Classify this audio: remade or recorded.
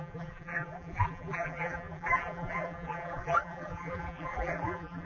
remade